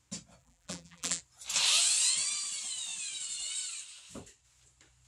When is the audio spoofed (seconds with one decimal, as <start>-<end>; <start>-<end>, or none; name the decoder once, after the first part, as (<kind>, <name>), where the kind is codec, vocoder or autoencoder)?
0.4-1.2 (vocoder, BigVGAN v2)